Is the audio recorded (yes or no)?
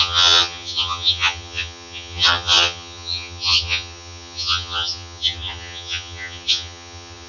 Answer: no